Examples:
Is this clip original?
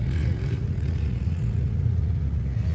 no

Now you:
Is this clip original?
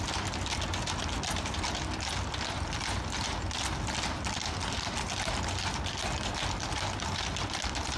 yes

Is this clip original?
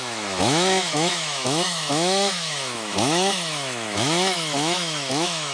no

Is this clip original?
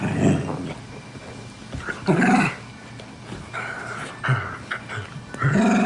yes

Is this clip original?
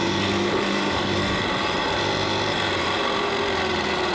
no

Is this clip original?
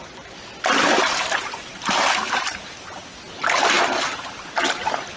yes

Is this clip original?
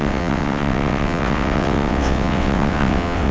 no